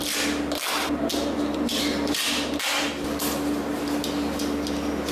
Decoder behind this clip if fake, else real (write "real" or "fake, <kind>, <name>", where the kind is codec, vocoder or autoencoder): real